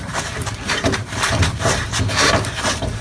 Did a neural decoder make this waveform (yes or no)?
yes